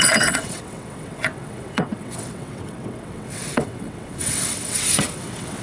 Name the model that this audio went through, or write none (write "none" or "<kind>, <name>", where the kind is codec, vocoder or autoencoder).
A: vocoder, WaveNeXt